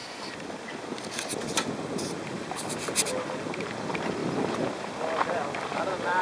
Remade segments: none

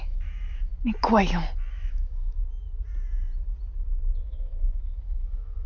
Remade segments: 0.0-0.7 (autoencoder, DAC-VAE); 1.7-2.4; 4.2-5.7

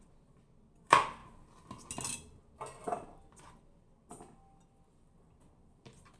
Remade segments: none

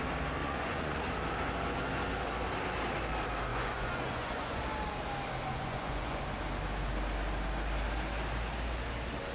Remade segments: 0.4-1.0 (vocoder, Vocos); 3.5-4.6; 5.5-6.2

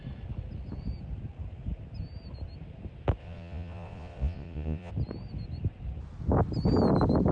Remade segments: 3.2-4.9 (vocoder, Vocos)

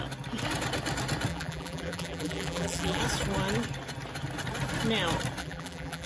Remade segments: 1.3-3.0 (vocoder, BigVGAN v2); 5.4-6.1

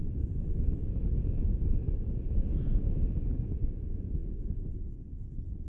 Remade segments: none